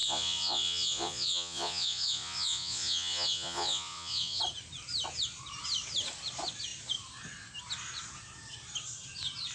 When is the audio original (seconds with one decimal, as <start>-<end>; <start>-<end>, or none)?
4.4-9.5

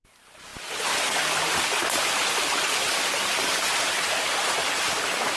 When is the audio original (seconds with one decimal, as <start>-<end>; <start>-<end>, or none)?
0.0-0.5; 3.7-5.4

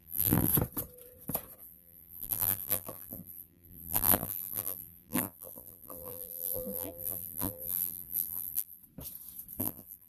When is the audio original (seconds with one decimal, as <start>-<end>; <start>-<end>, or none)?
0.5-1.6; 8.8-9.6

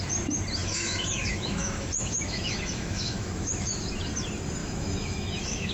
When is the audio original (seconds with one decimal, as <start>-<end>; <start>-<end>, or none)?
0.0-0.6; 3.8-4.6

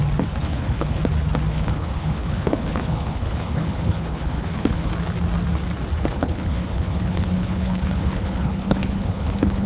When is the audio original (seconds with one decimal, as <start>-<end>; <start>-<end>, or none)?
0.0-0.4; 1.0-1.5; 4.9-6.1

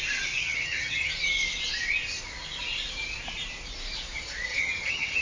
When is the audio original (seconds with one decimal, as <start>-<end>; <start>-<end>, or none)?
0.0-0.4; 1.1-4.5

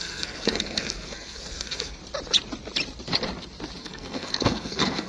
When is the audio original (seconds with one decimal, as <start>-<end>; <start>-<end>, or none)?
2.0-3.8

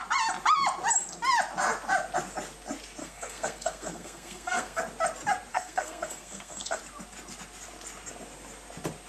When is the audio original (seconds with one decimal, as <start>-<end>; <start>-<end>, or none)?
0.0-3.0; 4.8-5.5; 6.8-9.1